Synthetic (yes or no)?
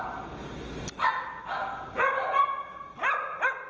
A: no